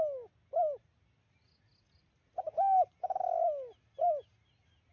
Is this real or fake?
real